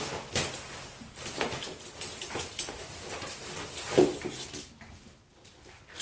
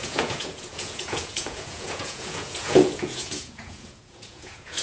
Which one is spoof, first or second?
second